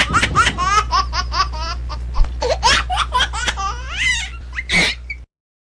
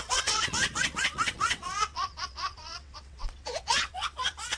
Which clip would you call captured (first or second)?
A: first